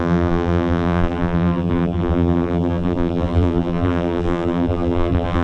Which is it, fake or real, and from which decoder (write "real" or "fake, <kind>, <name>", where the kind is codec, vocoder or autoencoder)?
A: fake, vocoder, BigVGAN v2